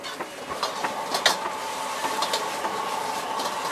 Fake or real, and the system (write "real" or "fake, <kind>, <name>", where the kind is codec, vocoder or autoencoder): real